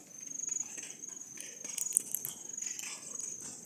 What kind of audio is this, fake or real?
real